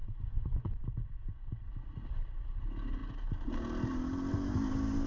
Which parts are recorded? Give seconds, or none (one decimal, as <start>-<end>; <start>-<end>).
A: 0.8-5.1